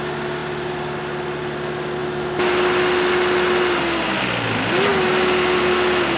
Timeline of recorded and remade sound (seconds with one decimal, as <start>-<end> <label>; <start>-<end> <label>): 0.0-6.2 recorded